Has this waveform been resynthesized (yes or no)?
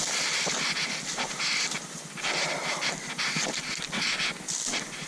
no